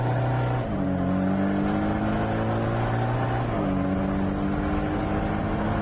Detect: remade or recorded recorded